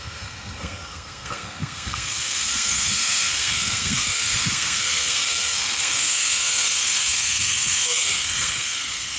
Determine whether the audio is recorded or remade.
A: remade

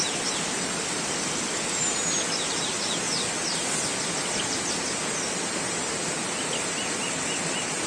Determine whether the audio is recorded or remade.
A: recorded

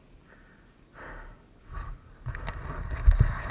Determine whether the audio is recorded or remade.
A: recorded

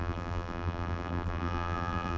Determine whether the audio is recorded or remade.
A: remade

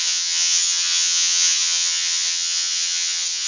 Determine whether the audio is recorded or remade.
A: remade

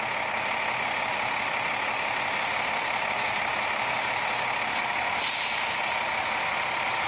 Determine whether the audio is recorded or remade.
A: recorded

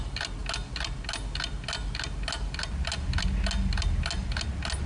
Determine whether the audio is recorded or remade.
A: recorded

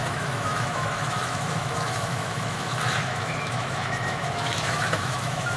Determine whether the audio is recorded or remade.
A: remade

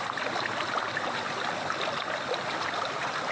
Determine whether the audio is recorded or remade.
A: recorded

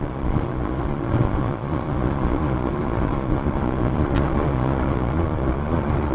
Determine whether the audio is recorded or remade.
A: remade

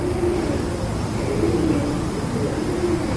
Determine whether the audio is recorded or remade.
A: recorded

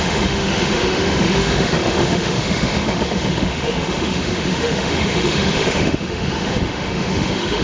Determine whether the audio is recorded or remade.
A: remade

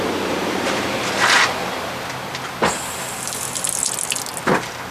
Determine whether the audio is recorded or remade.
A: recorded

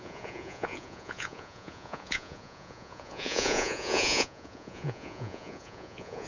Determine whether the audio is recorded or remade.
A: remade